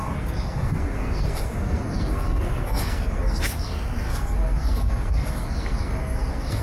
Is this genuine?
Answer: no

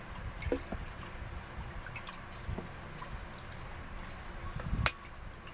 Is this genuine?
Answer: yes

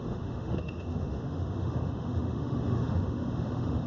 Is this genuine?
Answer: no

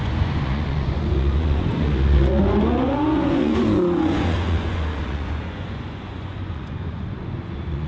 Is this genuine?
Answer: no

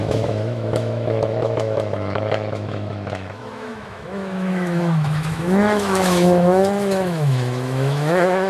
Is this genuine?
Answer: no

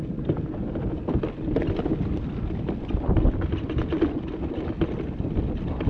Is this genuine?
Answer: yes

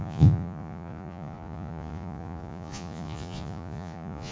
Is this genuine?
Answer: no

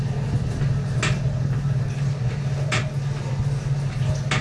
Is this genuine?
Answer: yes